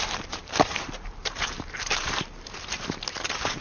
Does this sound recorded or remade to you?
remade